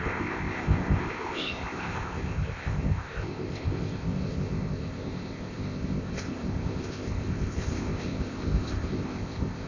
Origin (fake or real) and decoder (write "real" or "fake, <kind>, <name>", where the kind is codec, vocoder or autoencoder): fake, codec, ZipCodec